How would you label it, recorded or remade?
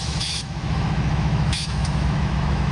remade